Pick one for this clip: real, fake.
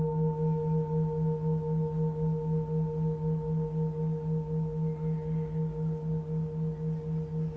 real